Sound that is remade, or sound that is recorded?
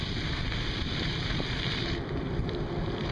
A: remade